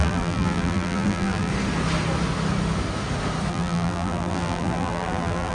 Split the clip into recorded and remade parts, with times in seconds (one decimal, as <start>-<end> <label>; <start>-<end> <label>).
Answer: 0.0-1.5 remade; 1.5-3.5 recorded; 3.5-5.5 remade